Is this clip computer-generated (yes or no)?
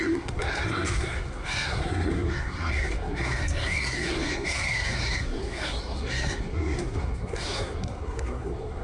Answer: yes